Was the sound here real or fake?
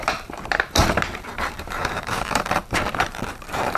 fake